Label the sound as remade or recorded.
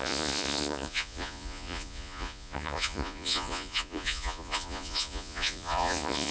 remade